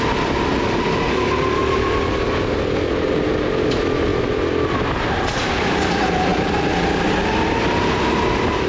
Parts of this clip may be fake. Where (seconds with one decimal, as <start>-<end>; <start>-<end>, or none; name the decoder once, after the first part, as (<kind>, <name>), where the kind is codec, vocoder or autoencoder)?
none